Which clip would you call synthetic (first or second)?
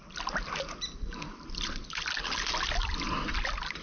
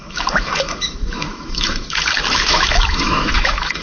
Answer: second